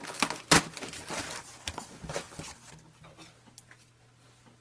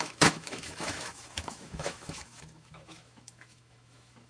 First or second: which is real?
first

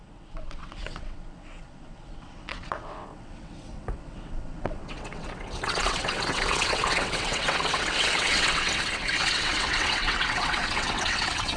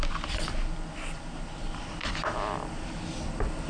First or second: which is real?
second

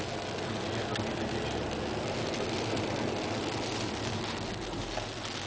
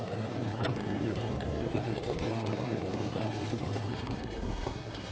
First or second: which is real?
first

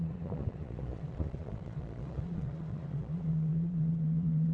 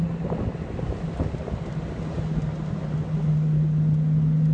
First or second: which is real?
second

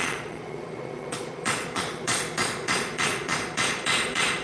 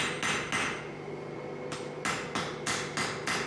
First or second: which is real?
second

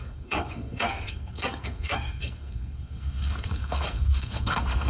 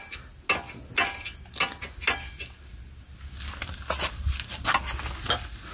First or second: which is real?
second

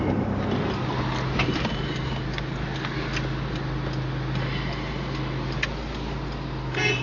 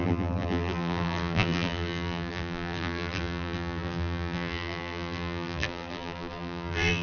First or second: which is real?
first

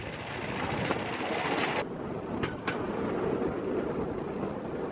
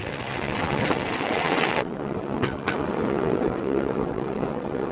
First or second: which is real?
first